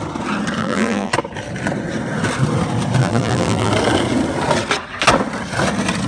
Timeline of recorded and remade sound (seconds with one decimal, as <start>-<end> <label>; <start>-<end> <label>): 0.0-0.6 recorded; 0.6-1.1 remade; 1.1-3.0 recorded; 3.0-3.7 remade; 3.7-6.1 recorded